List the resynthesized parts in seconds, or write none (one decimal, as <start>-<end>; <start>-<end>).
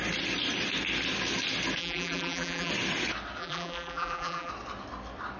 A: 1.8-2.7; 3.4-4.5